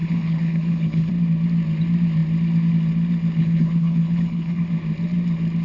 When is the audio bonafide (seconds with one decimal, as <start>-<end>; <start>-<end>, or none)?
1.1-3.4; 4.6-5.6